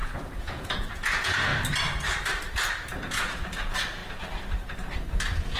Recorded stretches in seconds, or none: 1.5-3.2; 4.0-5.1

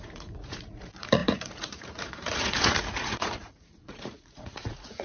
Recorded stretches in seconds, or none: none

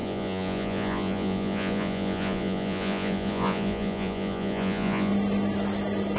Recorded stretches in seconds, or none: 5.1-6.2